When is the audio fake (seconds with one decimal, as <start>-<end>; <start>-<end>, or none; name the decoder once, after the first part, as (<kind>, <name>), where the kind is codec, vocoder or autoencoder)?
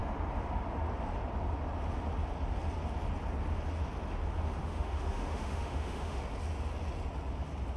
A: 4.6-6.2 (autoencoder, DAC-VAE)